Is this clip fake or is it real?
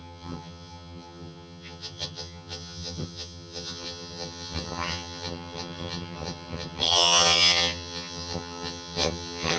fake